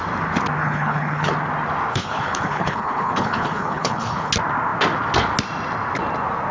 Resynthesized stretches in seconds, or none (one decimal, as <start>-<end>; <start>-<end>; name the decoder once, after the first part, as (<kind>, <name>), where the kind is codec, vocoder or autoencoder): 0.6-1.3 (codec, HILCodec); 1.9-4.3